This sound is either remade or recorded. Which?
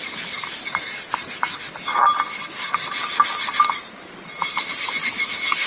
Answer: recorded